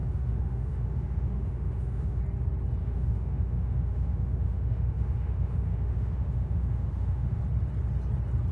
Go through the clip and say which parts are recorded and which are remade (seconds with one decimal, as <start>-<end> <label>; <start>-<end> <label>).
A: 0.0-2.2 remade; 2.2-2.8 recorded; 2.8-7.4 remade; 7.4-8.5 recorded